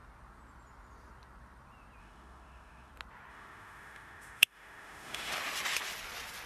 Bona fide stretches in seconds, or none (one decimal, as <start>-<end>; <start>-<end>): 0.0-2.0; 2.9-3.3; 5.3-6.5